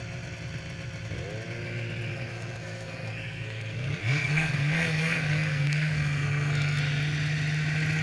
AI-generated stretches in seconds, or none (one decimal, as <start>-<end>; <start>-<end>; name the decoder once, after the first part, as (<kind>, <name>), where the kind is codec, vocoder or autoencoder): 2.1-6.8 (codec, SNAC)